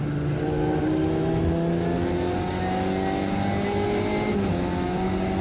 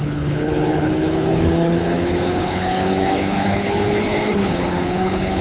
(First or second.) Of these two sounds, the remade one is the second